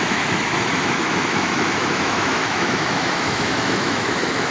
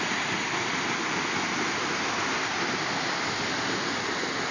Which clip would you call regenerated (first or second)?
first